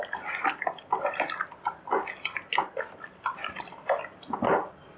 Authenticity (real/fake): real